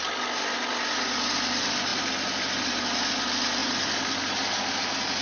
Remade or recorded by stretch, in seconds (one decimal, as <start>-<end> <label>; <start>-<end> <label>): 0.0-5.2 recorded